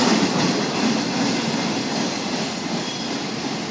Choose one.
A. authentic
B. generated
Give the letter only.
A